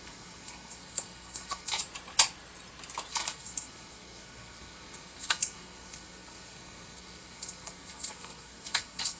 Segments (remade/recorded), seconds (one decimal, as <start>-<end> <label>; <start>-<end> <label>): 0.0-1.8 remade; 1.8-3.1 recorded; 3.1-9.2 remade